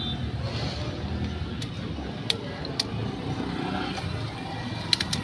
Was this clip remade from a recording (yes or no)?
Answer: no